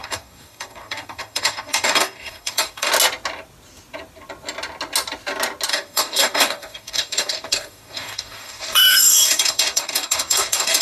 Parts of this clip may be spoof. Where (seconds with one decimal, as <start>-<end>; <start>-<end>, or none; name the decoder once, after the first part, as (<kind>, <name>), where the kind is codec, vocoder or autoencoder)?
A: 0.0-2.9 (codec, DAC); 5.7-10.8